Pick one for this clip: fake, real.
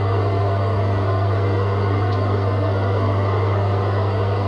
fake